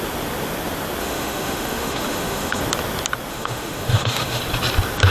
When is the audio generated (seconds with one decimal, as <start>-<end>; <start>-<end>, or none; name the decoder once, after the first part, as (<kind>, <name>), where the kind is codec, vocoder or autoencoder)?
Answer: 1.0-2.6 (autoencoder, DAC-VAE); 3.3-4.4